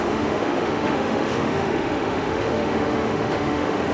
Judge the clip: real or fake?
fake